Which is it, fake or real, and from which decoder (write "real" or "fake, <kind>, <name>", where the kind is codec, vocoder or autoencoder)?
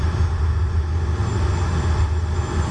real